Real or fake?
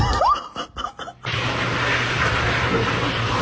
real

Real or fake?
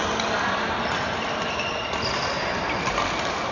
real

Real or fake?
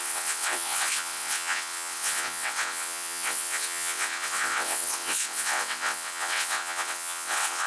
fake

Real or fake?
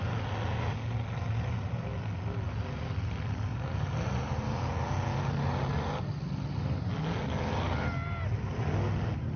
real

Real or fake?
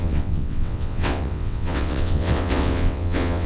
fake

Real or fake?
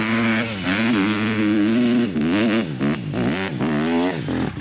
real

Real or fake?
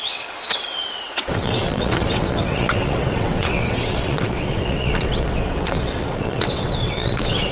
fake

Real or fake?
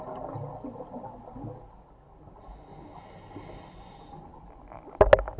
real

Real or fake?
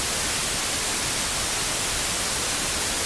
real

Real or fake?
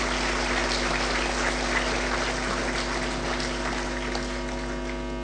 real